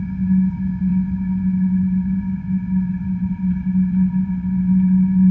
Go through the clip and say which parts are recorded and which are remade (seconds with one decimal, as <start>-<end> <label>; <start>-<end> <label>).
0.0-5.3 recorded